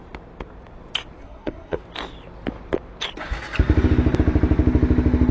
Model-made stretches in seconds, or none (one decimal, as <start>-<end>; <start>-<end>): 1.2-1.8